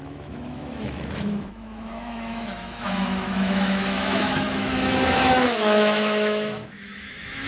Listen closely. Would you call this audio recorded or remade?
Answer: remade